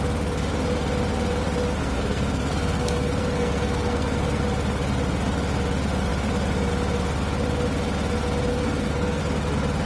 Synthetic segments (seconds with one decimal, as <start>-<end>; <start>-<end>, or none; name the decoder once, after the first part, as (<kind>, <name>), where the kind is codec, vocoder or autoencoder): 1.8-4.4 (codec, SNAC); 8.5-9.2